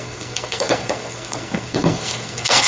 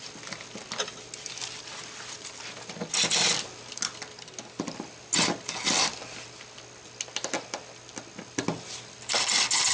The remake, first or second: first